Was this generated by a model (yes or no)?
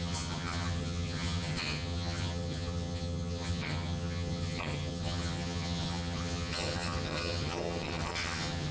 yes